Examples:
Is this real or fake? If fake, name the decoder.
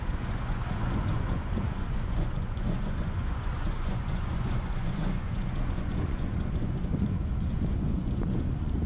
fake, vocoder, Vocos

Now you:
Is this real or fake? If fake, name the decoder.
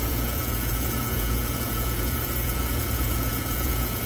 fake, vocoder, Vocos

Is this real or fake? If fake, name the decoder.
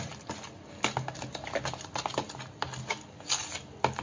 real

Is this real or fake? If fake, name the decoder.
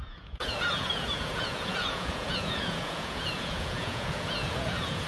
fake, vocoder, Vocos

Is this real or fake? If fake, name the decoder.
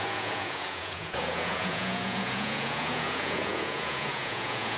fake, vocoder, Vocos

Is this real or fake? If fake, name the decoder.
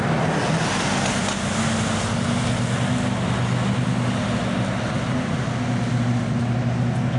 real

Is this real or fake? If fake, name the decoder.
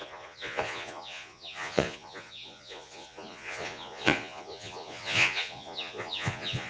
fake, vocoder, Vocos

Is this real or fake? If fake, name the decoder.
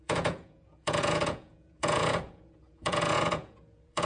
fake, vocoder, Vocos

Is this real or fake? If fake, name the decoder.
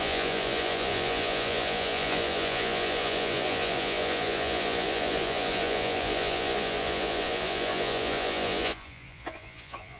fake, vocoder, Vocos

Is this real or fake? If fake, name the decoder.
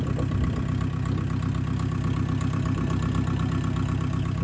real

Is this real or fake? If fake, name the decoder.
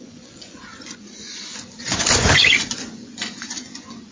fake, vocoder, Vocos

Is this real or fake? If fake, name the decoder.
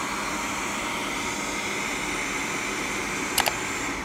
real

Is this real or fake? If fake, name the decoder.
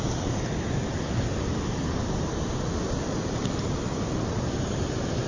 real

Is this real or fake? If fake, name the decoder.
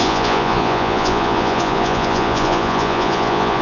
fake, vocoder, Vocos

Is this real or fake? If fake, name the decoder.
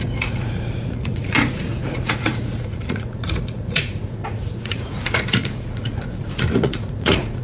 fake, vocoder, Vocos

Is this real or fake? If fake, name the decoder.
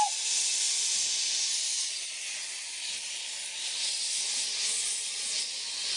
real